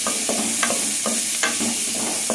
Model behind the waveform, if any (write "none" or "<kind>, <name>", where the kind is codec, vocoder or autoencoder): none